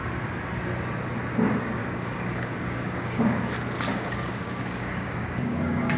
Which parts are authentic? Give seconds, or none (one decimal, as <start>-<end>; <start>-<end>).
0.0-1.8; 3.5-3.9